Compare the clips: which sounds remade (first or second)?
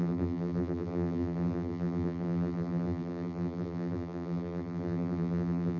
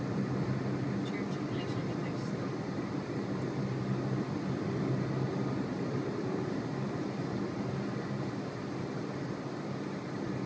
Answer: first